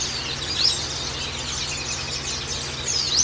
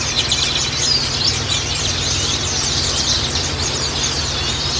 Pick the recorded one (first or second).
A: first